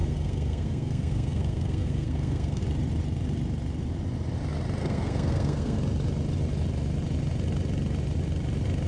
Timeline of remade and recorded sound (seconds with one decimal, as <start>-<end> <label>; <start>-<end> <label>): 0.0-2.6 remade; 2.6-4.8 recorded; 4.8-5.8 remade; 5.8-8.9 recorded